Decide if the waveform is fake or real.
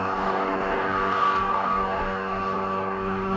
fake